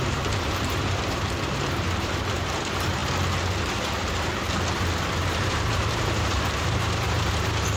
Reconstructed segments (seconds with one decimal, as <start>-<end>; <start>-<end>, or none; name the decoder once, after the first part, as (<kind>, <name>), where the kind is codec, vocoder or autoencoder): 0.0-3.0 (vocoder, BigVGAN v2); 3.5-4.3; 5.3-7.8